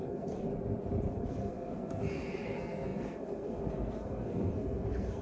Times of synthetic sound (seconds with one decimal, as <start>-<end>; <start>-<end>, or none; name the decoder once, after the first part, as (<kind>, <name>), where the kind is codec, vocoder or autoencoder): 0.0-0.5 (codec, SNAC); 1.1-5.2